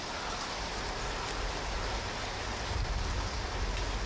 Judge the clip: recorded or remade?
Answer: recorded